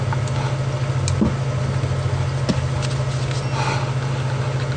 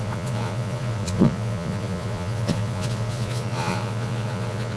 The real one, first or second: first